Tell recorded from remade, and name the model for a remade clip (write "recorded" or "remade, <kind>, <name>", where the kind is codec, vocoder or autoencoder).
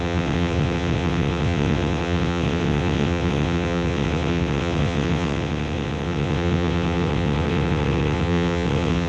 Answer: remade, vocoder, WaveNeXt